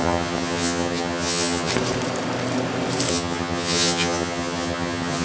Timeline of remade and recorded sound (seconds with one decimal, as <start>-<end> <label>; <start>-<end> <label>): 0.0-1.7 remade; 1.7-3.1 recorded; 3.1-5.2 remade